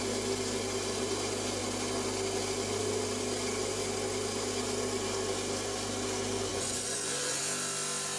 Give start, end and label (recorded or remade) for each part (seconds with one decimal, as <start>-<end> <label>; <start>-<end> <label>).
0.0-6.5 recorded; 6.5-7.4 remade; 7.4-8.2 recorded